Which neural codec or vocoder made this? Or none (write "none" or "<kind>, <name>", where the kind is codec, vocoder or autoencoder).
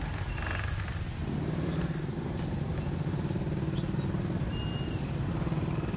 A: none